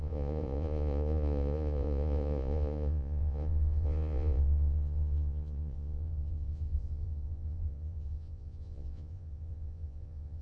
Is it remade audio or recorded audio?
remade